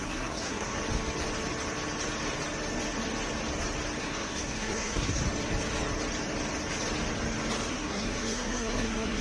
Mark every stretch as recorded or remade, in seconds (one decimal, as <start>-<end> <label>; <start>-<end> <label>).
0.0-0.8 remade; 0.8-4.0 recorded; 4.0-5.2 remade; 5.2-7.7 recorded; 7.7-9.2 remade